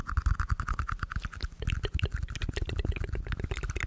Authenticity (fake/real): real